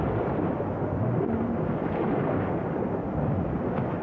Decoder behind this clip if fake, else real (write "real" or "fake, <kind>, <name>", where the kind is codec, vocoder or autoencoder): real